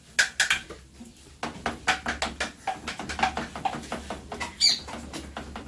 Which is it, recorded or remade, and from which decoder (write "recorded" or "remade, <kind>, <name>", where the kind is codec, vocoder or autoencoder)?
recorded